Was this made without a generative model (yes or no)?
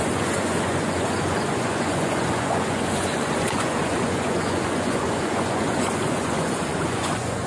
no